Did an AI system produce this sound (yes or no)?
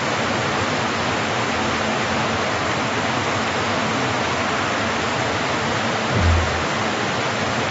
no